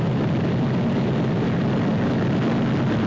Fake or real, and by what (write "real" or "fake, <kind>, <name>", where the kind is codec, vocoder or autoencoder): real